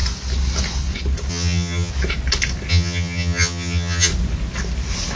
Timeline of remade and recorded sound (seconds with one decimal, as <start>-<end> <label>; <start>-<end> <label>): 0.0-1.3 recorded; 1.3-1.9 remade; 1.9-2.7 recorded; 2.7-4.1 remade; 4.1-5.2 recorded